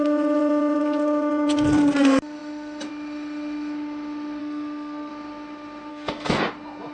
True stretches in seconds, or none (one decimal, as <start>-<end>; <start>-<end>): 0.0-4.4; 5.1-5.9; 6.5-6.9